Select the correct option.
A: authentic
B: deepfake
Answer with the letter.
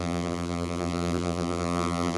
B